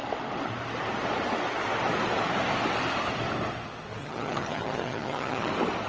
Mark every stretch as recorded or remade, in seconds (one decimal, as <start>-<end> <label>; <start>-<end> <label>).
0.0-4.0 recorded; 4.0-5.5 remade; 5.5-5.9 recorded